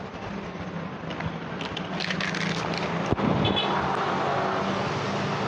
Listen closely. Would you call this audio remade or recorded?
recorded